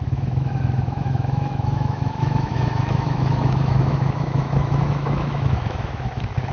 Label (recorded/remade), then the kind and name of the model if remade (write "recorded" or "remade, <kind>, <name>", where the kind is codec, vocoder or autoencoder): remade, autoencoder, DAC-VAE